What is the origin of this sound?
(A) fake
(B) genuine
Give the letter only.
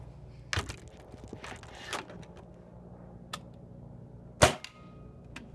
B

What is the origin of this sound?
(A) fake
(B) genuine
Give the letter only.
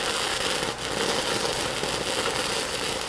B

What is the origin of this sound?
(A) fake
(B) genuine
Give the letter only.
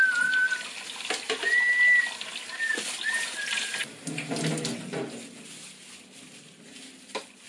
B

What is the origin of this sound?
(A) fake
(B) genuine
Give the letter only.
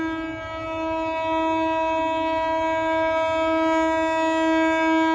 B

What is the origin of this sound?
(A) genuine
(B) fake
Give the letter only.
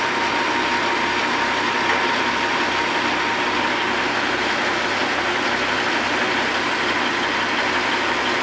A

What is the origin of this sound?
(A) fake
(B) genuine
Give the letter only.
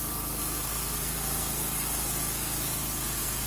A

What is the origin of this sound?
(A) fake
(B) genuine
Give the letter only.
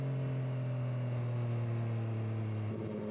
B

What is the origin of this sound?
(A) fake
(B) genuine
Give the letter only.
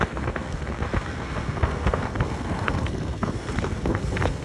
A